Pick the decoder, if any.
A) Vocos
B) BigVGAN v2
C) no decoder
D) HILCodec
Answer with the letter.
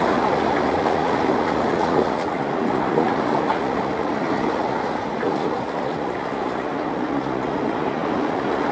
A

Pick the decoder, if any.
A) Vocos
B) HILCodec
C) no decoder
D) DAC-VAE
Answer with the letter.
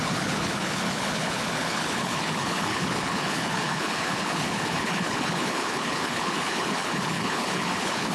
B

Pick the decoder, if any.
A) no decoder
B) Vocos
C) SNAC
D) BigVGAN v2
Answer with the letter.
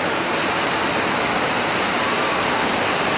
D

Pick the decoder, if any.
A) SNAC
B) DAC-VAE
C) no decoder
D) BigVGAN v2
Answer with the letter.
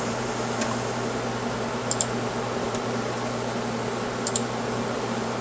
C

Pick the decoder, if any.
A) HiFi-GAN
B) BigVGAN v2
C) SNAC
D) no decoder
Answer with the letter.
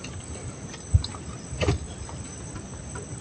D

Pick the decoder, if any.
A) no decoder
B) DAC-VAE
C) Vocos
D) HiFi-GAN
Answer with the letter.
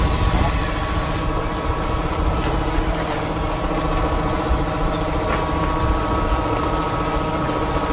A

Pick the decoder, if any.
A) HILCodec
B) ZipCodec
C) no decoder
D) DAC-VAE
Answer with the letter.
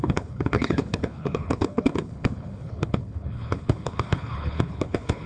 A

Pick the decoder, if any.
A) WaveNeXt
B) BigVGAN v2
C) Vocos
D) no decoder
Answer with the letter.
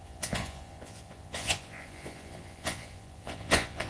C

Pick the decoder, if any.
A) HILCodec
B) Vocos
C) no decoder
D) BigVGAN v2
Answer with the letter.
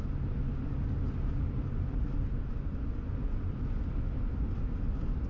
C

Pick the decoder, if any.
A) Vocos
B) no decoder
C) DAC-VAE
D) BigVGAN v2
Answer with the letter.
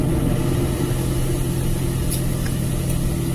B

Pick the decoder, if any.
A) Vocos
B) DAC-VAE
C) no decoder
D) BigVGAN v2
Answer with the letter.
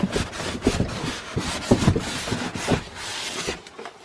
C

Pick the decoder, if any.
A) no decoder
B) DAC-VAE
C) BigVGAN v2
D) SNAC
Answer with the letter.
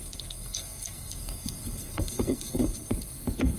D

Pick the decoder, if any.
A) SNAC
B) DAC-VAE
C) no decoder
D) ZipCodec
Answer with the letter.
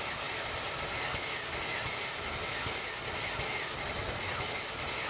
C